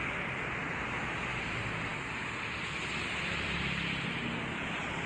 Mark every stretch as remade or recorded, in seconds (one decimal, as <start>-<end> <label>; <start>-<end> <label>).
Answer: 0.0-5.1 recorded